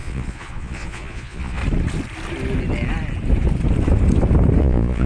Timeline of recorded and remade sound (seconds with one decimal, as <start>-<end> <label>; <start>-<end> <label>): 0.0-1.6 remade; 1.6-4.6 recorded; 4.6-5.1 remade